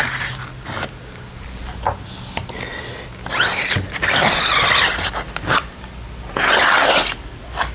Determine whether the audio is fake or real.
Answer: real